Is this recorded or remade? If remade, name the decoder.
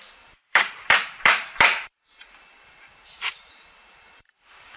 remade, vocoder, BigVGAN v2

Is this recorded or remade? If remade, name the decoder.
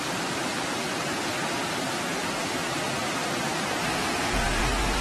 remade, vocoder, BigVGAN v2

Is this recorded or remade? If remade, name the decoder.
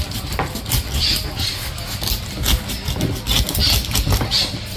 recorded